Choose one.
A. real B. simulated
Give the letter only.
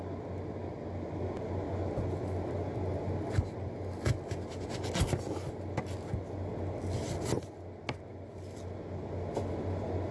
A